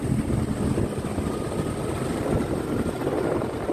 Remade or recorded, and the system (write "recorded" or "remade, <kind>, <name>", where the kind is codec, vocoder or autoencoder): recorded